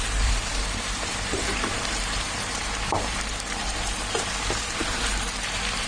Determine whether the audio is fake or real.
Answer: fake